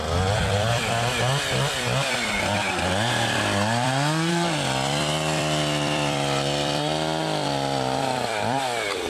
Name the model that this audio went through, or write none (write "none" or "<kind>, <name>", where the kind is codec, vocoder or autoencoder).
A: vocoder, BigVGAN v2